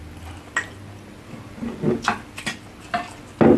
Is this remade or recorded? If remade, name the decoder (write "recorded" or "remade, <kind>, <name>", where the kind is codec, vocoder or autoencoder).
recorded